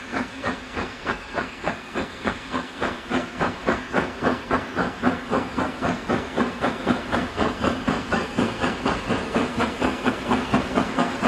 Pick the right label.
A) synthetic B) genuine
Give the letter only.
A